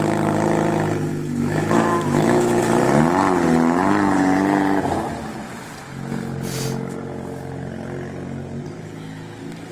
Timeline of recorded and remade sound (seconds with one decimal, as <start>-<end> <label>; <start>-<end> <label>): 0.0-1.1 recorded; 1.1-2.6 remade; 2.6-9.7 recorded